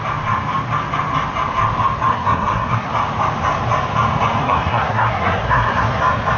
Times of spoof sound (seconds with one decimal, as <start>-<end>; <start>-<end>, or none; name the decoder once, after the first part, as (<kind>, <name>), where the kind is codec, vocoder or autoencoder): 2.1-2.9 (codec, SNAC); 4.4-6.0